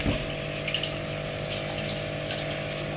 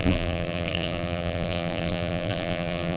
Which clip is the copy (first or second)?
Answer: second